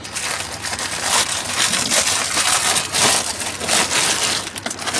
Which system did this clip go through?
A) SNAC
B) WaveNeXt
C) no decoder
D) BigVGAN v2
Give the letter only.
C